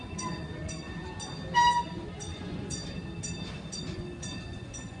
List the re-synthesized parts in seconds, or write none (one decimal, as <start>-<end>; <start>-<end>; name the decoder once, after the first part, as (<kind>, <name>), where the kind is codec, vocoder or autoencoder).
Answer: 0.0-1.0 (vocoder, Vocos); 1.8-2.8; 3.7-5.0